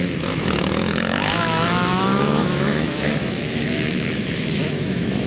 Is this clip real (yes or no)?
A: no